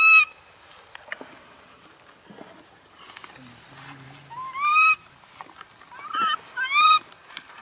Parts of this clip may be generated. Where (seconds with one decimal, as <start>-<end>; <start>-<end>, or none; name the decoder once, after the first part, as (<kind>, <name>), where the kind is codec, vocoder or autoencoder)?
none